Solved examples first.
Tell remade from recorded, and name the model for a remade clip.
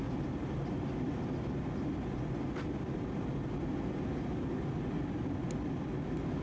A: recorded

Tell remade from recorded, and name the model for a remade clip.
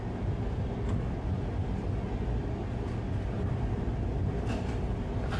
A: recorded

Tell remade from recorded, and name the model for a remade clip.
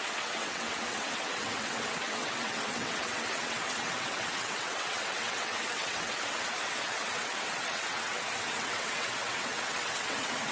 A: remade, vocoder, WaveNeXt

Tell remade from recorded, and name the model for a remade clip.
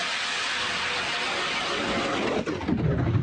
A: recorded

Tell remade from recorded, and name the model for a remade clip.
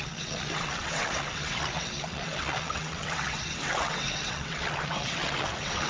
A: remade, vocoder, WaveNeXt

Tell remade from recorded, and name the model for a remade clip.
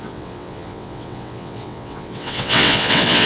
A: remade, vocoder, WaveNeXt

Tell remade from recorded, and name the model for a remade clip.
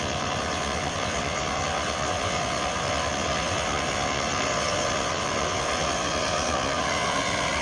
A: remade, vocoder, WaveNeXt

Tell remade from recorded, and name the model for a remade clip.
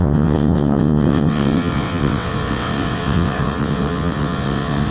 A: remade, vocoder, WaveNeXt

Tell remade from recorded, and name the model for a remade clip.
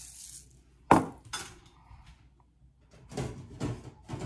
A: recorded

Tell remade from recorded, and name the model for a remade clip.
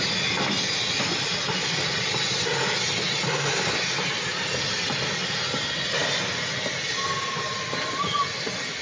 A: recorded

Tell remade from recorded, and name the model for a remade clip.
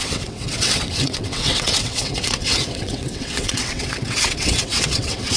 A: remade, vocoder, WaveNeXt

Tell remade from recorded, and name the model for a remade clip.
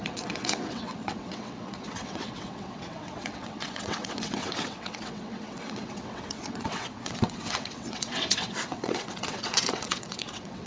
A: remade, vocoder, WaveNeXt